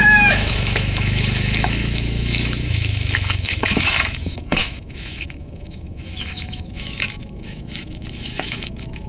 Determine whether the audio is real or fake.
fake